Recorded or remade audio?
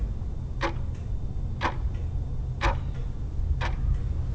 recorded